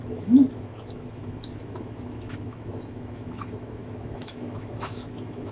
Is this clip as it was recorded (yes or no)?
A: no